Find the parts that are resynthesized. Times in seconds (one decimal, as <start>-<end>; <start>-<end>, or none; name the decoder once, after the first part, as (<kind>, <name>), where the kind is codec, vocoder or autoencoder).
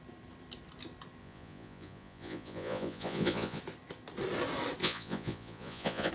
1.2-3.6 (vocoder, Vocos); 4.8-6.1